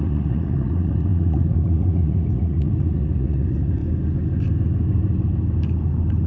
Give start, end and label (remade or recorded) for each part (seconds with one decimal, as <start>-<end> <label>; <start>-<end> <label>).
0.0-3.8 remade; 3.8-6.3 recorded